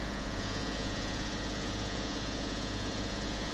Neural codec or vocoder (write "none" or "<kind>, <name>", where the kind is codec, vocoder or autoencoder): vocoder, Vocos